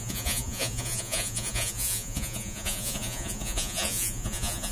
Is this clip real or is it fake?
fake